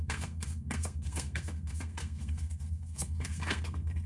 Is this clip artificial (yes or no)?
yes